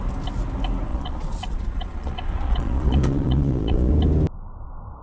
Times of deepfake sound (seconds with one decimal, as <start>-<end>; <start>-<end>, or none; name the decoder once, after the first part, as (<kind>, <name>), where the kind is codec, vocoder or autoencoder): 0.9-3.9 (vocoder, Vocos)